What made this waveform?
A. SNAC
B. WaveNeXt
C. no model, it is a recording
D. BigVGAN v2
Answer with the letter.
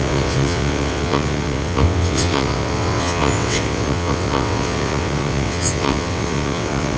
B